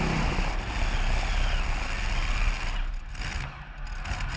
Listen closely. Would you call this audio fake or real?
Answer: real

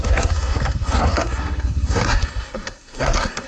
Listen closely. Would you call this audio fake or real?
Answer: fake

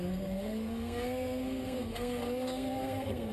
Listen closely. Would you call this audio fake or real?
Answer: fake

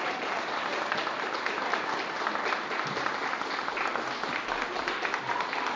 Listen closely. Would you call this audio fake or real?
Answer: real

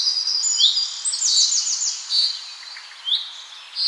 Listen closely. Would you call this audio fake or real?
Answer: real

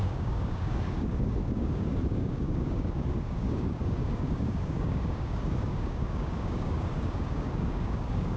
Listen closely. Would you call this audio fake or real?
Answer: fake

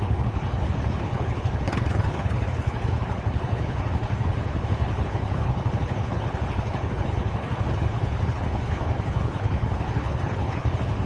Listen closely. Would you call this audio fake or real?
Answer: fake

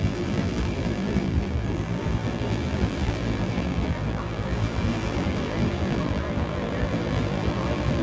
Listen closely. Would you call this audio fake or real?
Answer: fake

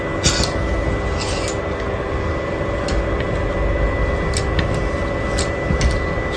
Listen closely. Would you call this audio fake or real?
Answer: real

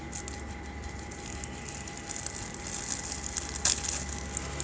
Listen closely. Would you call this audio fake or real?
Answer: real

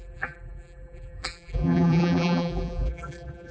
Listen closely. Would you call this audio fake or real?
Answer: fake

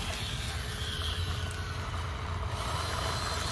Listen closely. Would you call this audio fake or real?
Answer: real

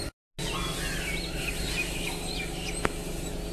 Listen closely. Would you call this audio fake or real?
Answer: real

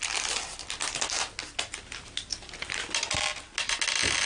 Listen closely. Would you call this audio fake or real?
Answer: real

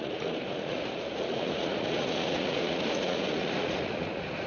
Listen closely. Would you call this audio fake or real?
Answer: fake